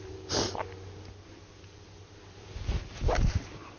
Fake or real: real